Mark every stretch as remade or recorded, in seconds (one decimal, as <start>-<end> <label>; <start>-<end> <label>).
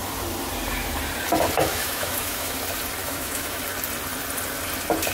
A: 0.0-1.7 recorded; 1.7-2.6 remade; 2.6-3.0 recorded; 3.0-3.6 remade; 3.6-5.1 recorded